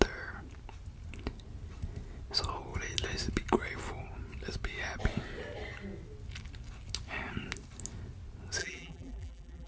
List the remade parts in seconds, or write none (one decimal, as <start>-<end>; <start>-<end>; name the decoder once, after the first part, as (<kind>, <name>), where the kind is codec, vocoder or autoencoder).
8.6-9.7 (vocoder, BigVGAN v2)